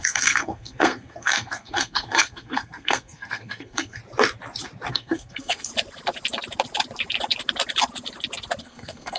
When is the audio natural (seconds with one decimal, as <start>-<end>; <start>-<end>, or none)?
4.0-4.9; 5.7-8.6